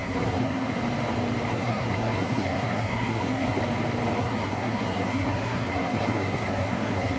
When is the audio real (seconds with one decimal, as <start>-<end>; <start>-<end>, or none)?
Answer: 0.8-1.5; 3.6-4.2